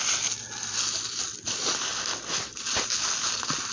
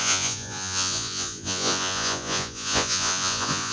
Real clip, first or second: first